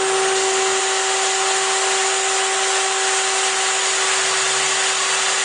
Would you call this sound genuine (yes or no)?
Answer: yes